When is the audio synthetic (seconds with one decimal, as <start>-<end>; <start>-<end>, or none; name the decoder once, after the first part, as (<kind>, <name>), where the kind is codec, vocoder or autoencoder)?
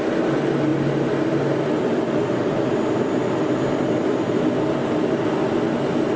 none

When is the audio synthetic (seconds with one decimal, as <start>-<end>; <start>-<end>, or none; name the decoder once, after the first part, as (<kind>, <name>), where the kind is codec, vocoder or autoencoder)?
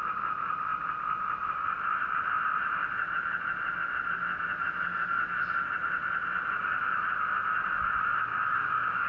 8.3-9.1 (codec, DAC)